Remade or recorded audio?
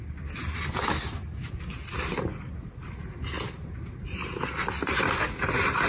recorded